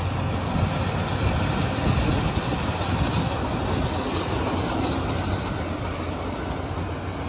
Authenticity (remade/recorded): recorded